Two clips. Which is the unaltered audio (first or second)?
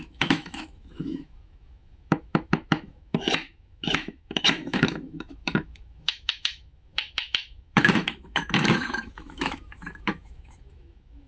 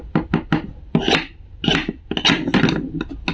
second